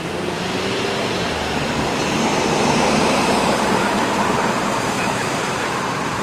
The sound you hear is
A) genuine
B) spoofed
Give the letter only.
B